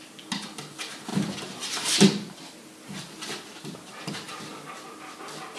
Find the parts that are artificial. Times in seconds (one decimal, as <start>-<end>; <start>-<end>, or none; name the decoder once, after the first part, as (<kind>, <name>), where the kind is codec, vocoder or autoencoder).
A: none